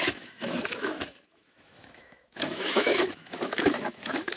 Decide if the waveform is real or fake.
fake